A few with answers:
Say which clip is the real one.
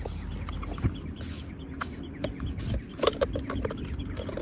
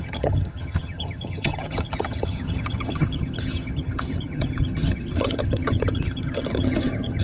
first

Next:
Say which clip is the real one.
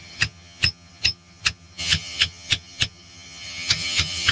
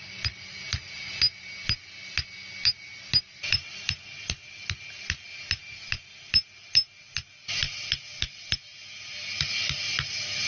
second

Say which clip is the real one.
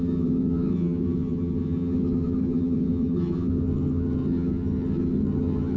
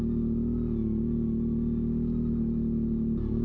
second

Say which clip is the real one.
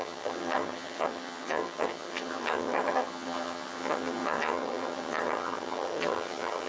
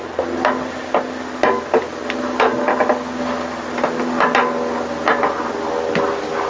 second